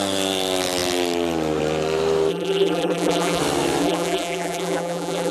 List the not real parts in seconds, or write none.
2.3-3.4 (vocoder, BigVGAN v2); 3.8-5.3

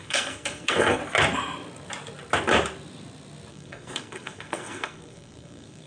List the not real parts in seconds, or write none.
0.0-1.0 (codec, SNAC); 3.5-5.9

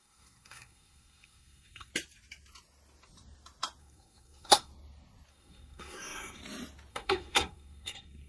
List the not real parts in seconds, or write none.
0.0-1.9 (codec, SNAC); 3.8-4.7; 5.3-6.4; 6.9-8.3

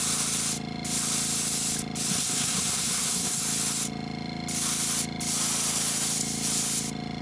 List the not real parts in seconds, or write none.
2.1-3.4 (codec, SNAC)